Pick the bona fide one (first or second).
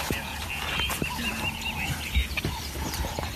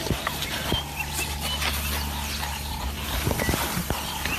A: second